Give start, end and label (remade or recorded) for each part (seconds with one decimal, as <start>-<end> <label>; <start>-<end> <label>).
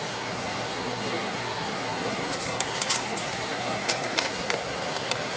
0.0-5.4 remade